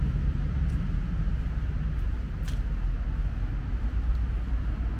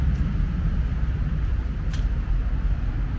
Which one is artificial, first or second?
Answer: second